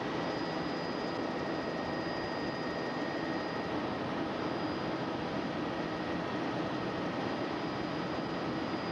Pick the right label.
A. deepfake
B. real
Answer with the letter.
B